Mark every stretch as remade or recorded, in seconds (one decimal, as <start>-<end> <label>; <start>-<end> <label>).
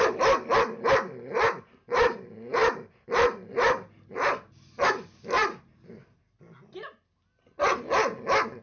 0.0-8.6 recorded